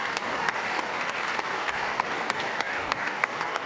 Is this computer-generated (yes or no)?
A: yes